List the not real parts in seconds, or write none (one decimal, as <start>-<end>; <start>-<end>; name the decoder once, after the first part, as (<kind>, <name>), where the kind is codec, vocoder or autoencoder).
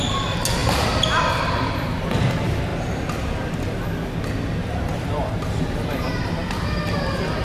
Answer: 0.6-2.3 (vocoder, BigVGAN v2); 4.6-6.3